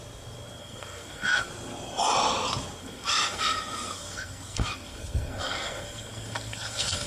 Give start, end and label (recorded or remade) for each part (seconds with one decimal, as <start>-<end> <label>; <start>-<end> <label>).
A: 0.0-0.6 recorded; 0.6-1.5 remade; 1.5-2.8 recorded; 2.8-7.1 remade